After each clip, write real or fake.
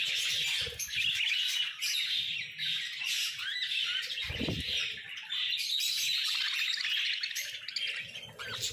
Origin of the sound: real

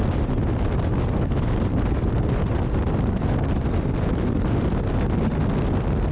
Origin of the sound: real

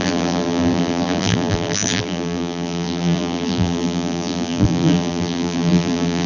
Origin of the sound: fake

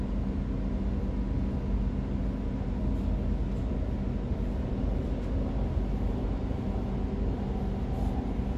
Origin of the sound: real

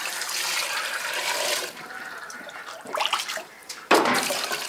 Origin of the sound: fake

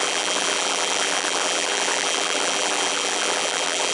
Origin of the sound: fake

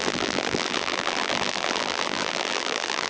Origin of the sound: fake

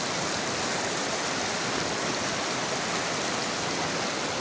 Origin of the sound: real